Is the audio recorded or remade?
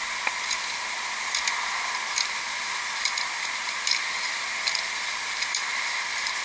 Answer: remade